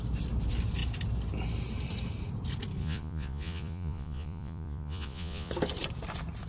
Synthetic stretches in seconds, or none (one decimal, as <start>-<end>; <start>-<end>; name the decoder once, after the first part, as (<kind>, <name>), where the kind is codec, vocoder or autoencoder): 2.8-5.5 (vocoder, Vocos)